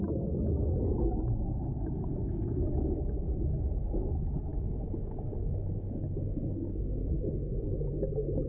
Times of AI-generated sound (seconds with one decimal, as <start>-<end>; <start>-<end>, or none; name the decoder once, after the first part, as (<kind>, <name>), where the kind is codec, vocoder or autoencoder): 2.2-3.3 (codec, DAC); 4.5-7.3